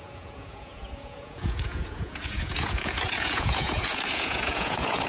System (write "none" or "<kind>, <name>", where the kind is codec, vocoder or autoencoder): vocoder, Vocos